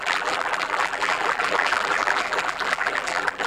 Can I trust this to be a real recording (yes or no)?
no